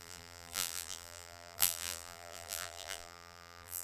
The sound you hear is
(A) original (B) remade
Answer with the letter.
B